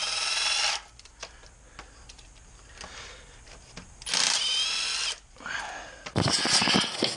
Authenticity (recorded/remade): recorded